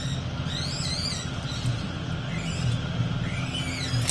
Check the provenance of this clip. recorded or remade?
recorded